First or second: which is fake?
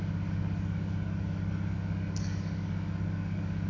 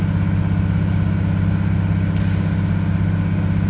first